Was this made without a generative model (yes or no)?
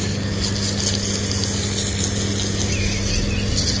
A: yes